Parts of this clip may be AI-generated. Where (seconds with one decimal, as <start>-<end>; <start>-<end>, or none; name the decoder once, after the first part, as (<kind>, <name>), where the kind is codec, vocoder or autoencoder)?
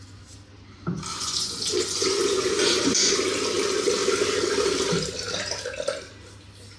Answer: 1.1-3.1 (vocoder, Vocos)